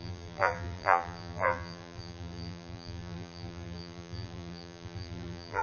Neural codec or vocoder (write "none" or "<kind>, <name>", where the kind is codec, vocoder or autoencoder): vocoder, BigVGAN v2